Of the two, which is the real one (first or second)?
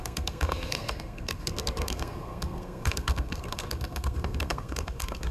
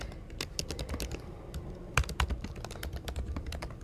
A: second